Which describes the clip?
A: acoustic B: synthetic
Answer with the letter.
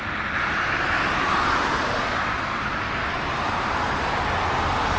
A